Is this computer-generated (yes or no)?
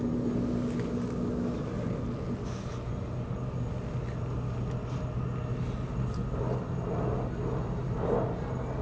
no